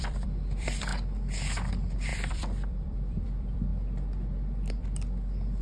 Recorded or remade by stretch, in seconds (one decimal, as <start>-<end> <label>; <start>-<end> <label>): 0.0-0.9 remade; 0.9-1.7 recorded; 1.7-3.7 remade; 3.7-4.7 recorded; 4.7-5.6 remade